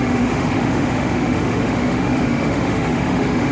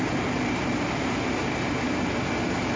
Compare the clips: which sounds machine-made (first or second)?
first